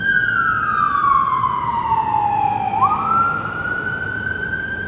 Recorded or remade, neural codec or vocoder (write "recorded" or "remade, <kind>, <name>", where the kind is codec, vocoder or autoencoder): recorded